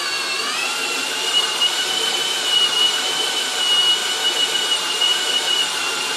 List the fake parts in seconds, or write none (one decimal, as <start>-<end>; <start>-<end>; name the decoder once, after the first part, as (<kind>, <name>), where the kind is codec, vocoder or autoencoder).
1.0-3.6 (vocoder, BigVGAN v2); 4.0-6.2